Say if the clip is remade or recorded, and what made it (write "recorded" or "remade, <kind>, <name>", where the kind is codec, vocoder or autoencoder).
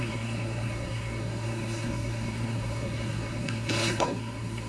remade, codec, SNAC